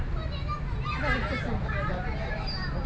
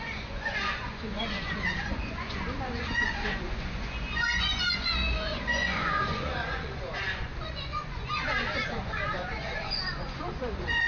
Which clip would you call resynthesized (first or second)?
second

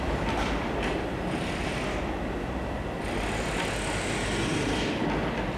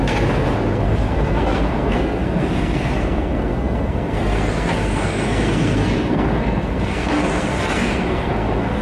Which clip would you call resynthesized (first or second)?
second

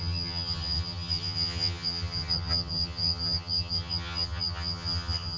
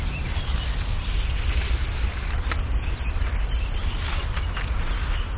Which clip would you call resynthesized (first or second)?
first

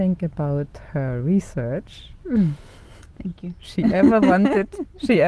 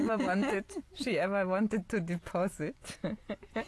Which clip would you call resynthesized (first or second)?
second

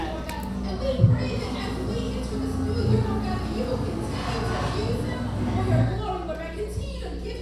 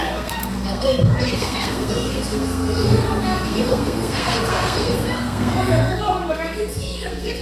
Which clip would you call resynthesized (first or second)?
second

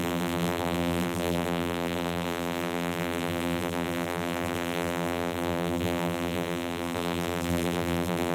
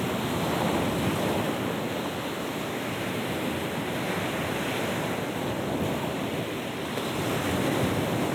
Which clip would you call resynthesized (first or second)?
first